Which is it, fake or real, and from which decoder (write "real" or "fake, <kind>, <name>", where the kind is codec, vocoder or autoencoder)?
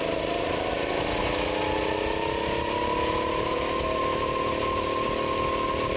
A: real